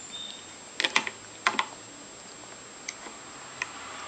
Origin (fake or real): real